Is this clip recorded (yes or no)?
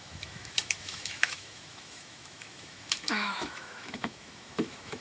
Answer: no